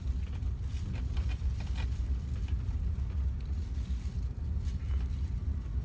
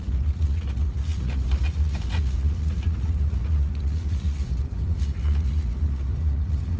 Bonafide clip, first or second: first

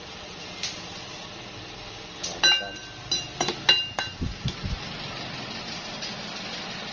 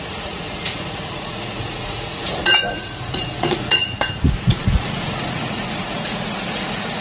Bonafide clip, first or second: first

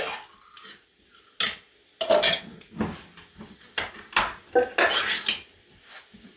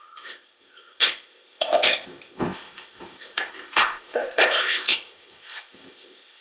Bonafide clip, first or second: first